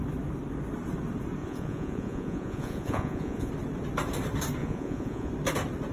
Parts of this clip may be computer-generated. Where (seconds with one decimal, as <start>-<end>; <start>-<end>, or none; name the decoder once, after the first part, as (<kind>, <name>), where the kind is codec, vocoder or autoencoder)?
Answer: 1.4-3.5 (vocoder, Vocos); 4.6-5.3